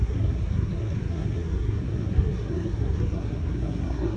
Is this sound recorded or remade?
remade